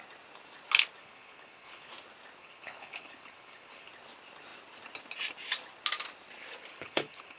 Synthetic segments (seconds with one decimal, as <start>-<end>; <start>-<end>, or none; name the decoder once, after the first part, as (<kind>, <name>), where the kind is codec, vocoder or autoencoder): 1.0-1.9 (codec, HILCodec); 2.4-3.9; 6.7-7.4